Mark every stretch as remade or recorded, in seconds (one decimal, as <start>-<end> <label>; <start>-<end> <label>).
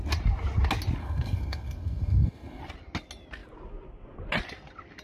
0.0-1.0 recorded; 1.0-2.6 remade; 2.6-5.0 recorded